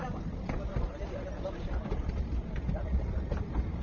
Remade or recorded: recorded